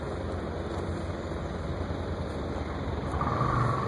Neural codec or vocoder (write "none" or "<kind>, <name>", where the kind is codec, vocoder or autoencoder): none